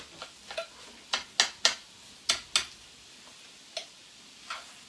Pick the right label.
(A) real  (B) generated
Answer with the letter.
A